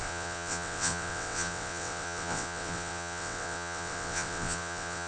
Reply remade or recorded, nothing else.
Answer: remade